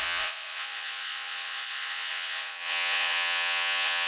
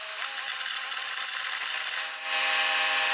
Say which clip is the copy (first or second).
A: first